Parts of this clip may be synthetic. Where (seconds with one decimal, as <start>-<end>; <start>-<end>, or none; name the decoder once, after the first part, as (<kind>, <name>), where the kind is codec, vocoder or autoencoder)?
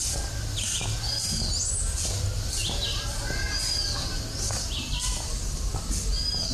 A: none